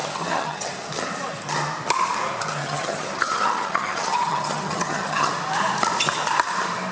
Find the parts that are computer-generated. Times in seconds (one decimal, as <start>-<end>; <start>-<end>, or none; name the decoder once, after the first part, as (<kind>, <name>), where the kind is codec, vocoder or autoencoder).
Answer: 0.0-0.7 (vocoder, HiFi-GAN); 2.6-5.3